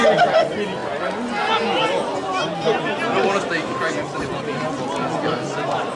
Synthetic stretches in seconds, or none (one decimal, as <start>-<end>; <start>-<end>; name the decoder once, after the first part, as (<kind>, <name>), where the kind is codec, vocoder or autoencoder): none